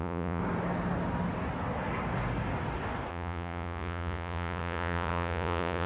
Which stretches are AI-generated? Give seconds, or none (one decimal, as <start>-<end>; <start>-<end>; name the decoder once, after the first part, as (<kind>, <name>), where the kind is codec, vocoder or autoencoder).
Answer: 0.0-0.4 (vocoder, Vocos); 3.1-5.9